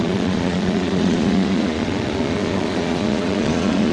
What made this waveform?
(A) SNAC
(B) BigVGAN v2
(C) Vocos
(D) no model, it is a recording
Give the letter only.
C